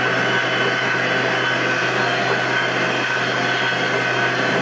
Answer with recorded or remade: recorded